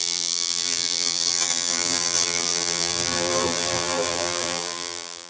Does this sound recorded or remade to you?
remade